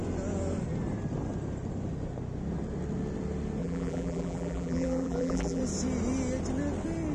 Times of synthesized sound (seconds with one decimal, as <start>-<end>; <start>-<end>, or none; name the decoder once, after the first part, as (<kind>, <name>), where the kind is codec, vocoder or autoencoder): 3.6-5.6 (vocoder, BigVGAN v2)